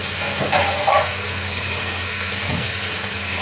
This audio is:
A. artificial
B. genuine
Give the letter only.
A